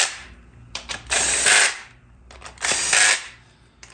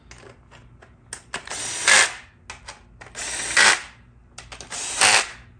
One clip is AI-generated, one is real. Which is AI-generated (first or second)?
first